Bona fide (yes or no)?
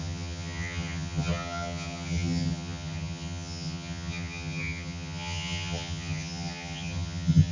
no